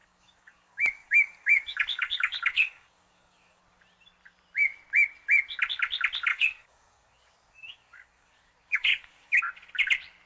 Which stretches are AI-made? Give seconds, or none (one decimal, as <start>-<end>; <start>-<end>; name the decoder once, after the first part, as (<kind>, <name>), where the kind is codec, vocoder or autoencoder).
0.0-3.6 (codec, DAC); 6.3-9.4